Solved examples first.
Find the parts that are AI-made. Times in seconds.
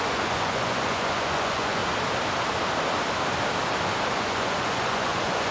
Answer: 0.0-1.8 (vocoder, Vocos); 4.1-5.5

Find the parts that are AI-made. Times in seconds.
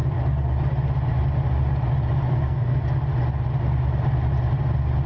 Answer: 2.3-2.8 (codec, SNAC)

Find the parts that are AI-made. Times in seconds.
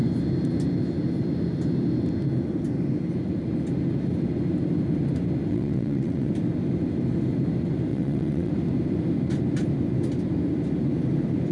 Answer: 5.5-6.3 (vocoder, WaveNeXt); 7.9-8.5